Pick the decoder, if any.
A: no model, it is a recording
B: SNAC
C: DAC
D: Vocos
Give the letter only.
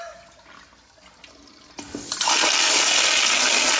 A